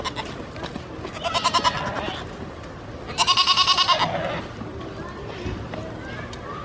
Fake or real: real